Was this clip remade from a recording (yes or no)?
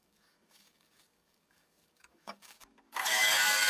yes